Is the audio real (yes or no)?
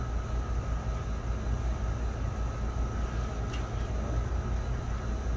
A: yes